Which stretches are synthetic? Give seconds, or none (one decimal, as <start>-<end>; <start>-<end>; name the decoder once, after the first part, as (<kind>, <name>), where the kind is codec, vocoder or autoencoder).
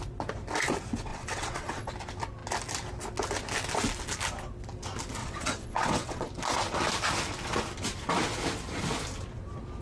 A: 1.1-1.9 (vocoder, WaveNeXt); 5.2-6.3